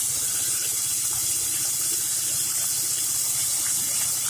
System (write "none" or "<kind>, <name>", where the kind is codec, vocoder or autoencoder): none